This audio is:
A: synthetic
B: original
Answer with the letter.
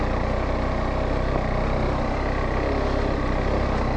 B